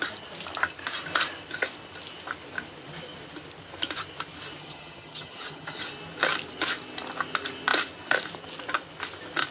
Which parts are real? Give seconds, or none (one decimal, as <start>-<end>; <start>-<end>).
0.0-4.6; 5.9-9.5